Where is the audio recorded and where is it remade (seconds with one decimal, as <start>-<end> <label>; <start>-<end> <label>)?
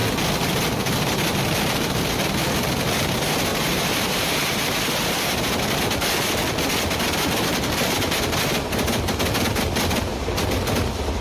0.0-3.5 recorded; 3.5-5.4 remade; 5.4-7.5 recorded; 7.5-8.0 remade; 8.0-11.2 recorded